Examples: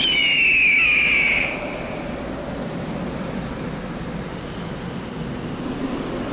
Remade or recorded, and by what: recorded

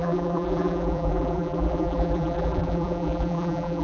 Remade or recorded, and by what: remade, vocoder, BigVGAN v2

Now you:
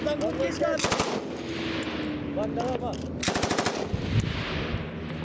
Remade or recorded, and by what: recorded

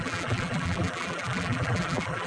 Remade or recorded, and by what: remade, vocoder, BigVGAN v2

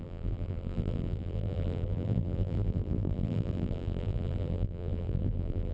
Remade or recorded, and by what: remade, vocoder, BigVGAN v2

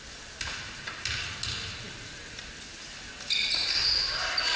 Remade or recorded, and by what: recorded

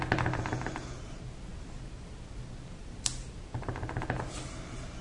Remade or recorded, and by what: recorded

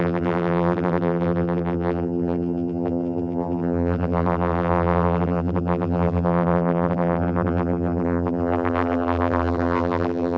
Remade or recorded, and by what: remade, vocoder, BigVGAN v2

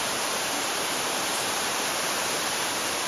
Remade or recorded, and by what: remade, vocoder, BigVGAN v2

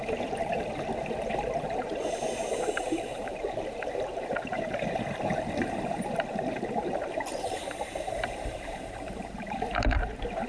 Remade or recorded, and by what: remade, vocoder, BigVGAN v2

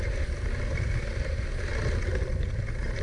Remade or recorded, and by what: recorded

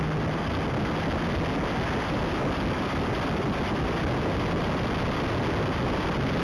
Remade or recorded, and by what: recorded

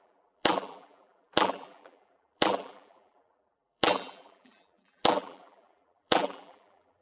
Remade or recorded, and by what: remade, vocoder, BigVGAN v2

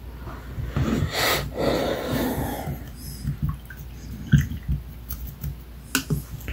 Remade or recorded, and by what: recorded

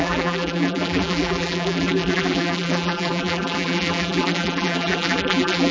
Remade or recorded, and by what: remade, vocoder, BigVGAN v2